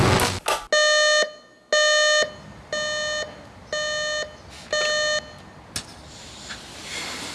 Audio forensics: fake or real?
real